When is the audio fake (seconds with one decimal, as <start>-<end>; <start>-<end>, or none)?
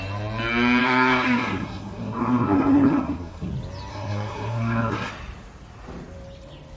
0.8-3.5; 3.9-5.1